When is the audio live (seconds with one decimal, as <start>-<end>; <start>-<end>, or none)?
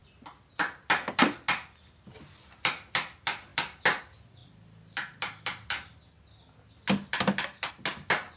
0.0-8.4